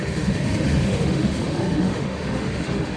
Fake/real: fake